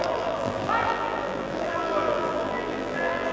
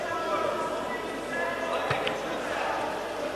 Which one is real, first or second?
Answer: second